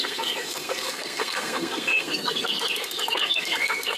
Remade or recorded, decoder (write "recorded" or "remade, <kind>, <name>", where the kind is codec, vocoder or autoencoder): remade, codec, SNAC